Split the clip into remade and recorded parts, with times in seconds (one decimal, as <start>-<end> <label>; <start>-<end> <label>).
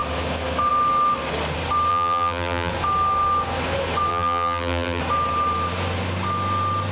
0.0-1.9 recorded; 1.9-2.7 remade; 2.7-4.1 recorded; 4.1-5.0 remade; 5.0-6.9 recorded